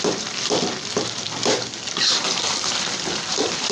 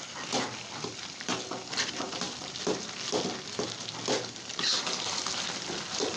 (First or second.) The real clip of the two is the second